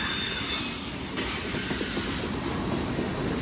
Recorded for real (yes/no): yes